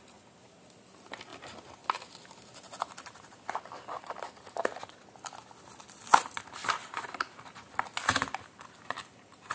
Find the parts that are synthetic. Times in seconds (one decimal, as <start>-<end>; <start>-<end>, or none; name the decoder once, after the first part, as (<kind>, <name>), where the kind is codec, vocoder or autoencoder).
none